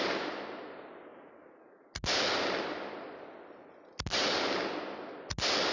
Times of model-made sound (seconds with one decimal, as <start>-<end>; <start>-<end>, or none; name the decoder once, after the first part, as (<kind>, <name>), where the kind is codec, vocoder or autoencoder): none